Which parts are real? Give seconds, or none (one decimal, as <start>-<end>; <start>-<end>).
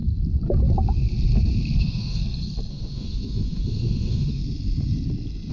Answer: 0.0-1.8; 2.2-2.7; 4.4-5.5